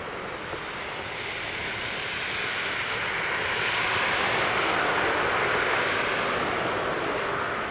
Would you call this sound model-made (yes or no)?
no